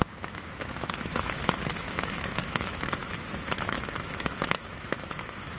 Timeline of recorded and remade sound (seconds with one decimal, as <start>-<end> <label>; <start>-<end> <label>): 0.0-5.6 remade